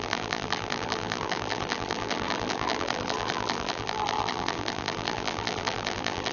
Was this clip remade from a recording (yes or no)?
yes